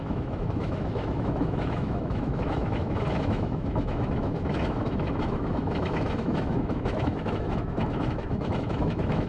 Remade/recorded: remade